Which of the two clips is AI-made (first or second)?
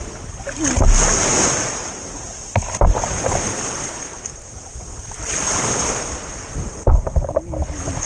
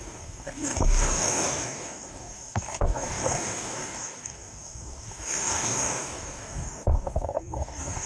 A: second